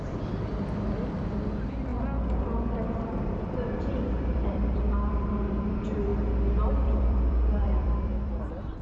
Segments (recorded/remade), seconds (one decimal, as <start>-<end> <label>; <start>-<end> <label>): 0.0-1.9 remade; 1.9-2.4 recorded; 2.4-6.1 remade; 6.1-6.7 recorded; 6.7-8.8 remade